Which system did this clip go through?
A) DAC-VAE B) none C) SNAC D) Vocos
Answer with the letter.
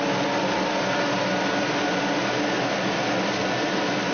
B